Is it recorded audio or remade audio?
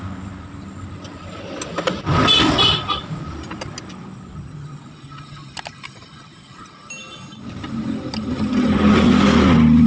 recorded